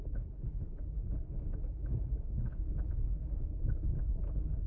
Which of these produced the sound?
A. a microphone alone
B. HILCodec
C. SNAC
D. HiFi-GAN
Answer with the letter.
B